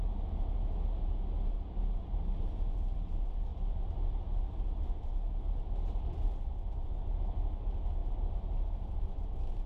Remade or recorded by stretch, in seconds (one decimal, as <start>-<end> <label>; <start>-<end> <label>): 0.0-3.5 recorded; 3.5-6.7 remade; 6.7-8.0 recorded; 8.0-8.6 remade; 8.6-9.7 recorded